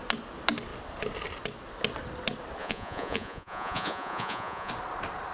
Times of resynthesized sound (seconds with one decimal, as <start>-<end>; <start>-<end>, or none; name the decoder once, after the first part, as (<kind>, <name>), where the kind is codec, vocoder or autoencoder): 2.6-4.7 (vocoder, Vocos)